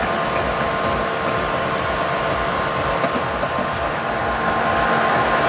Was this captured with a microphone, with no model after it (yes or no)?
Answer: yes